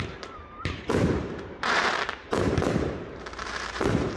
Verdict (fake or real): fake